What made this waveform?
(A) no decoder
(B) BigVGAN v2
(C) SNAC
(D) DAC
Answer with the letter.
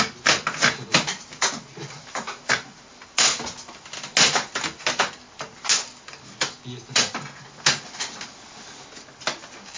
A